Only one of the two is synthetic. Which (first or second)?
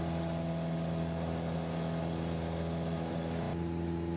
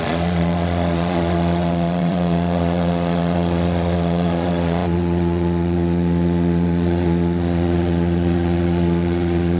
second